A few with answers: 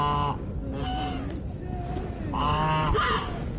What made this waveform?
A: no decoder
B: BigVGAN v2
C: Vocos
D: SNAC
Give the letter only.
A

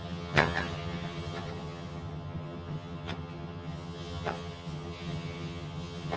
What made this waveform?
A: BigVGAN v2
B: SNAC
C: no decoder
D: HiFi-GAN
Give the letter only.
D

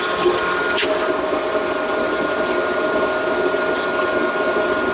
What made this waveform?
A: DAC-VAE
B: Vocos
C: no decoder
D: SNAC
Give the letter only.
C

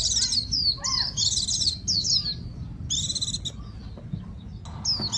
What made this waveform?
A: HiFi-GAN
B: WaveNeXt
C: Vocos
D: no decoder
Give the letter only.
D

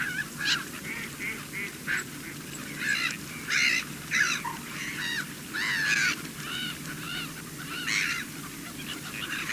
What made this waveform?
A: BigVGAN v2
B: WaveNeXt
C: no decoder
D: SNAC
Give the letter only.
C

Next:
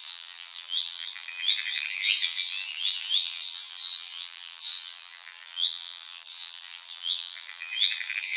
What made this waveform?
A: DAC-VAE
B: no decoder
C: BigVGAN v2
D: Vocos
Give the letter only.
C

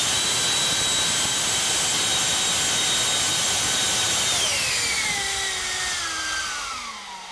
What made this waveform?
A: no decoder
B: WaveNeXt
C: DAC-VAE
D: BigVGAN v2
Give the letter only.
A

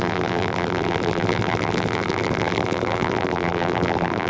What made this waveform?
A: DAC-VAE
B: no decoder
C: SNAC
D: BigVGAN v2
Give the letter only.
D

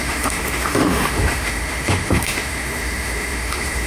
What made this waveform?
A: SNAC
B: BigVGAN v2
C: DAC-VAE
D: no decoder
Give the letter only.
C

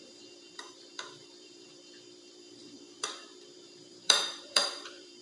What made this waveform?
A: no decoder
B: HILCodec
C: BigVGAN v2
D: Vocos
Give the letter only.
C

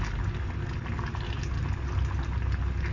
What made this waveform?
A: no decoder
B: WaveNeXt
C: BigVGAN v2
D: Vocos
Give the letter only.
A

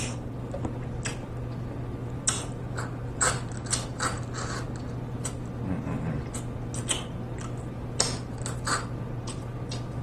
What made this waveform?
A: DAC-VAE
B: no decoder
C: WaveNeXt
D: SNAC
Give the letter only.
B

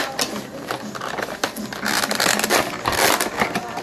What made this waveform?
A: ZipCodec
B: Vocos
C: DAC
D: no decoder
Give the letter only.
D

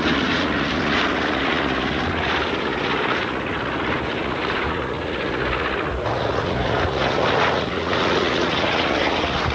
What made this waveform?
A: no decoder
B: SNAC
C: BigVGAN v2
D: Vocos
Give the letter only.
D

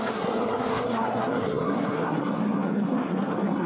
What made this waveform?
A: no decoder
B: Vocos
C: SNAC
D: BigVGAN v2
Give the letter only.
C